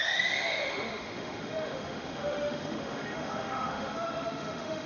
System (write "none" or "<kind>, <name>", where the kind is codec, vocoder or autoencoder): autoencoder, DAC-VAE